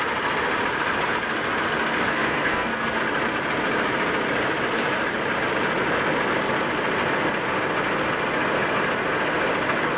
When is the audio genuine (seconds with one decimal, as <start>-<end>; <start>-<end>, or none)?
0.0-2.1; 3.0-10.0